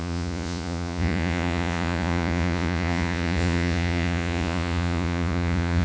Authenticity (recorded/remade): remade